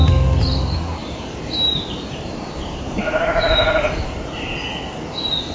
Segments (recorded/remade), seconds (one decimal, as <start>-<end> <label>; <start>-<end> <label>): 0.0-1.0 recorded; 1.0-4.3 remade; 4.3-5.5 recorded